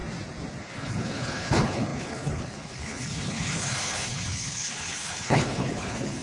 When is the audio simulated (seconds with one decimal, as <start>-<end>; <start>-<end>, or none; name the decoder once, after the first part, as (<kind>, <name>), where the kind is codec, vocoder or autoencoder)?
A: 0.6-6.2 (codec, HILCodec)